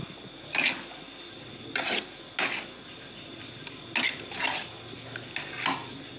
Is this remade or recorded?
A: recorded